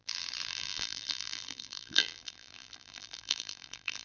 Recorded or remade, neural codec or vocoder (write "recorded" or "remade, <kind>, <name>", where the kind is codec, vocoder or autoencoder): remade, vocoder, BigVGAN v2